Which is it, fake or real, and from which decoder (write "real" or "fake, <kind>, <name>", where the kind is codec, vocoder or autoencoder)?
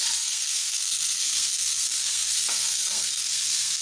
fake, codec, SNAC